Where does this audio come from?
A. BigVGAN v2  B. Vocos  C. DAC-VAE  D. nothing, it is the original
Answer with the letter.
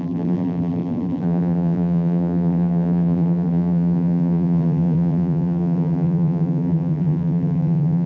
A